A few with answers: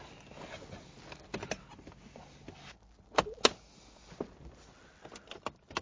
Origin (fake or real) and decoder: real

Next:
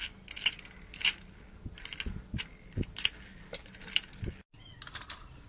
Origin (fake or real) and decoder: real